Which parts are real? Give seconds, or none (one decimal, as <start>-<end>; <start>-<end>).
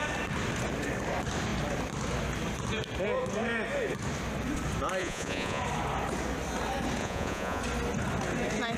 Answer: 0.0-5.0; 5.6-7.0; 7.6-8.8